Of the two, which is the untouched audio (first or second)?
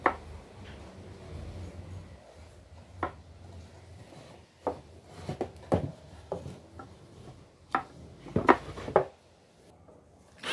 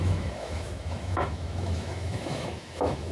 first